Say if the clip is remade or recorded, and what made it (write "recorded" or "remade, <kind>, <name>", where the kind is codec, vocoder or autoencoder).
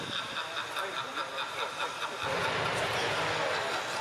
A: recorded